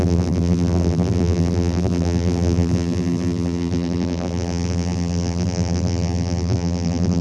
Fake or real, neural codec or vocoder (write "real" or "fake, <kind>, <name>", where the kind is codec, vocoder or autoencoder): fake, vocoder, BigVGAN v2